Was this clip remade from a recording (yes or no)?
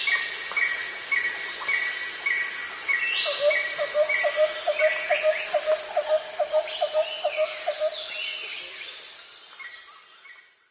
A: no